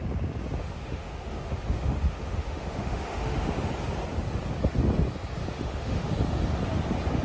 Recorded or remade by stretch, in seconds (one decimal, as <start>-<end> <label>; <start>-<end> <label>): 0.0-0.6 recorded; 0.6-3.7 remade; 3.7-5.4 recorded; 5.4-6.1 remade; 6.1-7.2 recorded